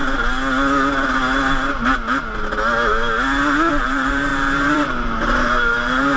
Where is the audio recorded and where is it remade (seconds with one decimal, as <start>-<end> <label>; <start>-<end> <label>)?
0.0-3.7 recorded; 3.7-6.2 remade